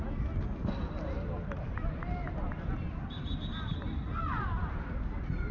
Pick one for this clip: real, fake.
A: real